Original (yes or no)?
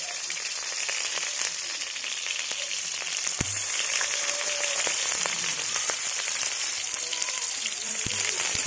no